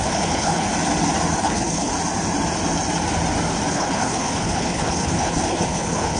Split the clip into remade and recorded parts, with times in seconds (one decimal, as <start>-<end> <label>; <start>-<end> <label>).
0.0-0.7 remade; 0.7-1.4 recorded; 1.4-1.9 remade; 1.9-3.7 recorded; 3.7-6.2 remade